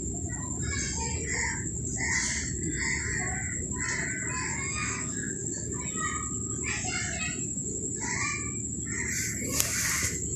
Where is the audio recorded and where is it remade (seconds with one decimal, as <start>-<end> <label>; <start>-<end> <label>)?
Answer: 0.0-4.5 recorded; 4.5-5.8 remade; 5.8-10.4 recorded